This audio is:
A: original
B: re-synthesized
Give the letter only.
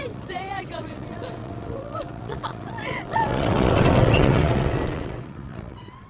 B